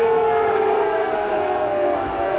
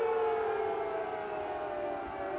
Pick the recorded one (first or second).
second